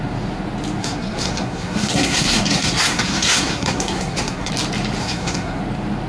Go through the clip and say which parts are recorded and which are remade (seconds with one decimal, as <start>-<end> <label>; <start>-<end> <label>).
0.0-0.8 recorded; 0.8-4.5 remade; 4.5-5.0 recorded; 5.0-5.6 remade; 5.6-6.1 recorded